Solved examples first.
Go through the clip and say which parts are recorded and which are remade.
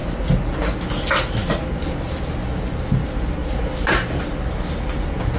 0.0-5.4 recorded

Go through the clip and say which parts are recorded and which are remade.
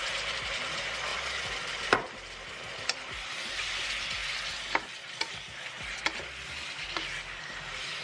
0.0-8.0 recorded